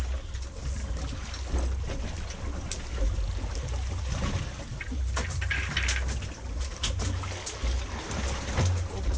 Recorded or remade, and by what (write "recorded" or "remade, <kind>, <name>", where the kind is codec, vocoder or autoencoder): recorded